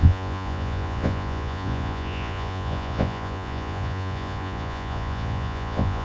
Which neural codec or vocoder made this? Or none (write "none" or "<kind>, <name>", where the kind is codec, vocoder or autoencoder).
vocoder, Vocos